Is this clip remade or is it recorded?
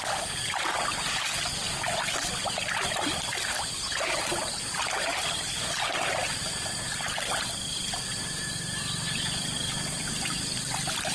recorded